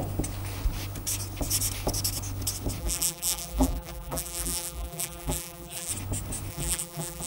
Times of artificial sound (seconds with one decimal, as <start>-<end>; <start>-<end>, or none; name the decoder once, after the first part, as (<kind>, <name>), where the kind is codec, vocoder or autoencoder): 2.8-5.9 (vocoder, BigVGAN v2); 6.5-7.3